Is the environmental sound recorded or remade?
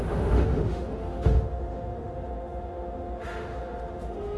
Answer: remade